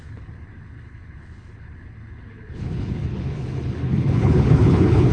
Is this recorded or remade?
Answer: remade